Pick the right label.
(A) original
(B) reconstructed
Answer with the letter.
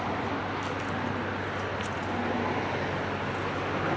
A